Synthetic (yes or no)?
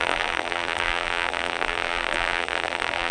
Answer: yes